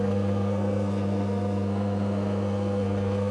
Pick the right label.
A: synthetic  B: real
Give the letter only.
A